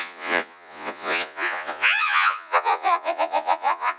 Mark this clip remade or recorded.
remade